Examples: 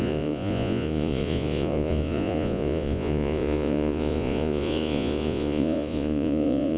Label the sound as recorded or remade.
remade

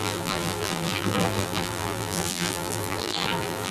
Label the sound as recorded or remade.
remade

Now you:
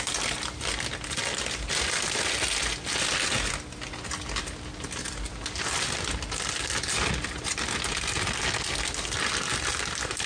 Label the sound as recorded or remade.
recorded